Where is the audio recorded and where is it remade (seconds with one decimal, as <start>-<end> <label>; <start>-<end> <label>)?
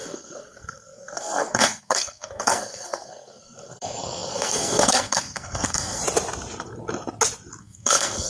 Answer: 0.0-6.0 remade; 6.0-7.6 recorded; 7.6-8.3 remade